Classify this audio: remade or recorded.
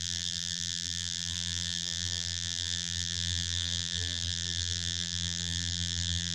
remade